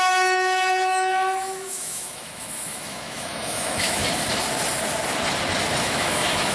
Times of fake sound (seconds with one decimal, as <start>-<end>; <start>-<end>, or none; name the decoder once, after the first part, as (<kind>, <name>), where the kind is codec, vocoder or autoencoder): 0.0-4.0 (autoencoder, DAC-VAE); 5.8-6.5